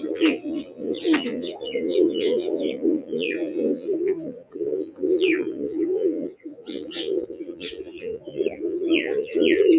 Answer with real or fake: fake